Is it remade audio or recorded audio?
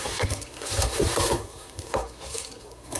remade